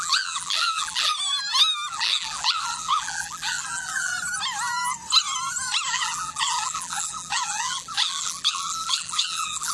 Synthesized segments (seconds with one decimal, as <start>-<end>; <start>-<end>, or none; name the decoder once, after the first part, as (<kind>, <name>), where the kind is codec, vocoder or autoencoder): 0.0-1.1 (vocoder, BigVGAN v2); 1.9-4.1; 5.9-9.7

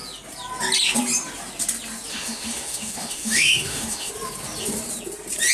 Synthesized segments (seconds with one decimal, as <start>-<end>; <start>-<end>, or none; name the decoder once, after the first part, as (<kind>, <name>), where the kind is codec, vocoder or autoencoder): 2.1-4.1 (autoencoder, DAC-VAE)

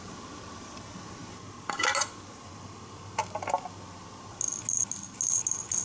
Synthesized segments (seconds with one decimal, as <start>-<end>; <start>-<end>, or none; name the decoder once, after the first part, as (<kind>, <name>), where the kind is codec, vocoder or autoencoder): none

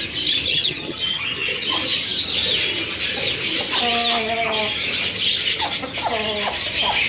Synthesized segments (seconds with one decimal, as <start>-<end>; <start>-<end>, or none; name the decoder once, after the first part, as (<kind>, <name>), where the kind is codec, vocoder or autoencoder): 0.5-1.3 (vocoder, HiFi-GAN)

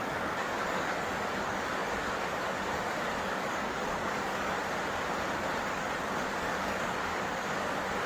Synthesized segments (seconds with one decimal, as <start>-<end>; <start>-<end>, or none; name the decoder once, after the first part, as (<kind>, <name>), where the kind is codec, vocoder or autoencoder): 0.0-4.6 (codec, DAC); 5.6-8.1